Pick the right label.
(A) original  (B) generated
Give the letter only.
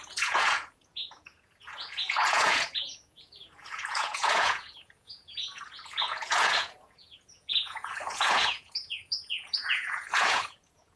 B